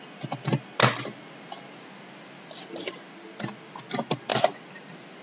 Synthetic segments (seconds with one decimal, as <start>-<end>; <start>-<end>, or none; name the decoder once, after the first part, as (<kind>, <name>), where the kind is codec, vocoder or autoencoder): 4.3-5.2 (vocoder, BigVGAN v2)